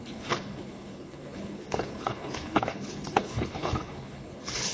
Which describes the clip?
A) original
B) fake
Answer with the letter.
B